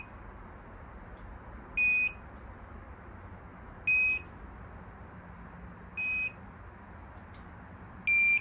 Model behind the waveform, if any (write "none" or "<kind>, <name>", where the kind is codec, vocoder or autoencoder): none